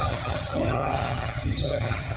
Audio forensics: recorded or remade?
remade